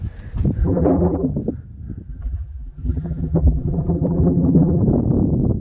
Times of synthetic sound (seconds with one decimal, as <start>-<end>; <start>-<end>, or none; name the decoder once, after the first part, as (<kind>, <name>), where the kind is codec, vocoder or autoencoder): 0.6-1.3 (vocoder, BigVGAN v2); 2.1-4.8